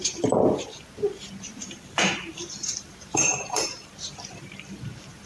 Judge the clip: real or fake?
fake